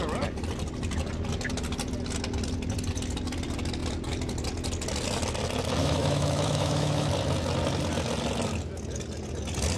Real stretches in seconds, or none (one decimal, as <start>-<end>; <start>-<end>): 0.0-5.8; 7.1-9.8